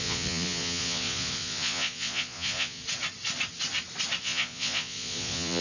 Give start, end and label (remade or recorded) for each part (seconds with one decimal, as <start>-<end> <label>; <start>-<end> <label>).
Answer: 0.0-2.8 remade; 2.8-4.2 recorded; 4.2-5.6 remade